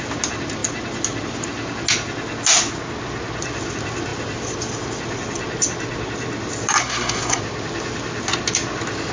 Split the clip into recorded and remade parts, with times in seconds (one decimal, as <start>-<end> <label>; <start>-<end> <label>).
0.0-6.8 recorded; 6.8-7.4 remade; 7.4-9.1 recorded